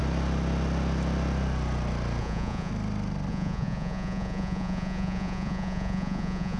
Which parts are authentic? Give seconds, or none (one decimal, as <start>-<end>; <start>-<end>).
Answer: 0.0-2.2; 2.7-3.3